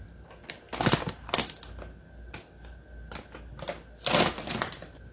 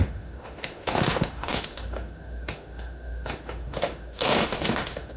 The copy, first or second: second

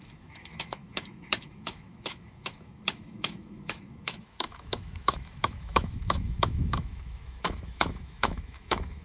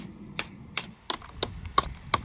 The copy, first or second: first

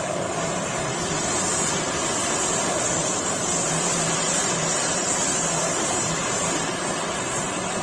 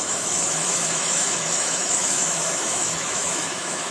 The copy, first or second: second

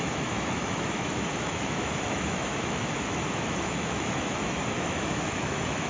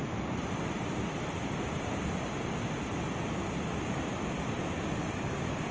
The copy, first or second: first